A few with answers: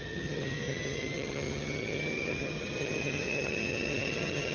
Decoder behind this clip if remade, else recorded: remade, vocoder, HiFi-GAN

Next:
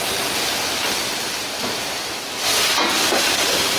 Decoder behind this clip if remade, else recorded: recorded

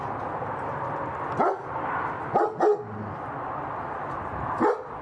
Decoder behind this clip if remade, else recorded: recorded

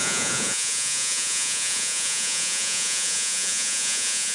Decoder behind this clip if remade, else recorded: remade, vocoder, Vocos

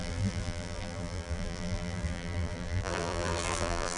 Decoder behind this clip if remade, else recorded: remade, vocoder, BigVGAN v2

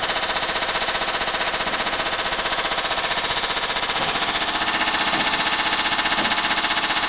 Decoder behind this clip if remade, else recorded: recorded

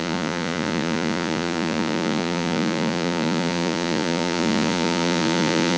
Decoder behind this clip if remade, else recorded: remade, vocoder, Vocos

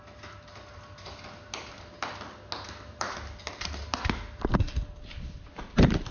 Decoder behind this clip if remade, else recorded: recorded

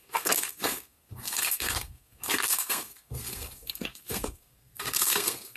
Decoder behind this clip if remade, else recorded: remade, codec, SNAC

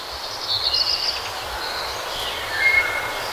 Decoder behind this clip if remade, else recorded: recorded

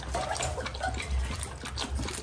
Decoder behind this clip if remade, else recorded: recorded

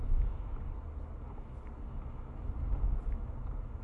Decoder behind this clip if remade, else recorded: recorded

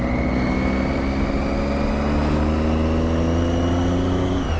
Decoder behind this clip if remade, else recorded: recorded